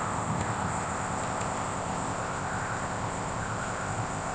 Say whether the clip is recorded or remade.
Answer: remade